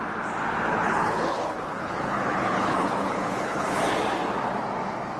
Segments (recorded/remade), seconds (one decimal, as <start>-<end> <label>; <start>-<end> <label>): 0.0-0.7 recorded; 0.7-3.8 remade; 3.8-5.2 recorded

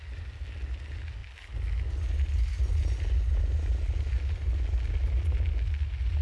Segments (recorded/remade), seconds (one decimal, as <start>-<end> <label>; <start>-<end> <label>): 0.0-6.2 recorded

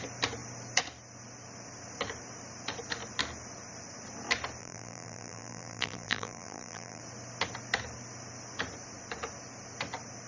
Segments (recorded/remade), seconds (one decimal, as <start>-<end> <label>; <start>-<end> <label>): 0.0-4.6 recorded; 4.6-7.0 remade; 7.0-10.3 recorded

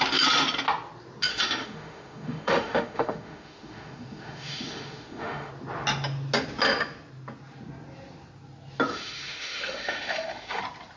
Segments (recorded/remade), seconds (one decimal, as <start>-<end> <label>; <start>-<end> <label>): 0.0-1.3 recorded; 1.3-5.5 remade; 5.5-8.9 recorded; 8.9-10.6 remade; 10.6-11.0 recorded